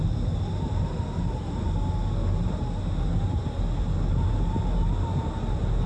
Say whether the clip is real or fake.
real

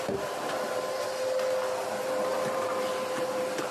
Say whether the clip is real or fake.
real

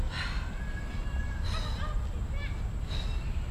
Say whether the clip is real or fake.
real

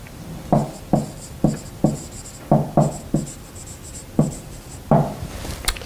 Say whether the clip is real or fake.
real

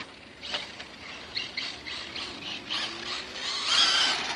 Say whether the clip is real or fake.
real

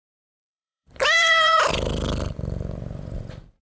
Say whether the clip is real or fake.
fake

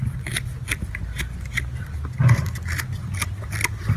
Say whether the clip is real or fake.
real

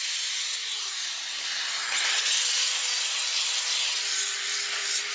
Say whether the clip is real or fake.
fake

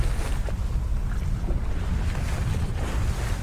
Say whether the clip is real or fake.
real